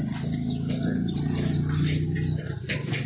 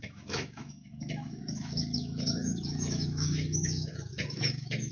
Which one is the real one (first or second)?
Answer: first